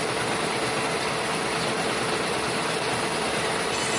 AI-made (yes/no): no